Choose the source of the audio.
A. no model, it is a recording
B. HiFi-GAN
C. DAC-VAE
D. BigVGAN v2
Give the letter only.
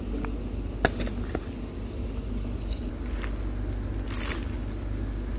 A